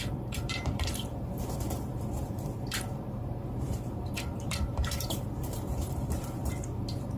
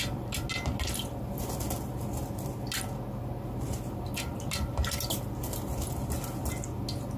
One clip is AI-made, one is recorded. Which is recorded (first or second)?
second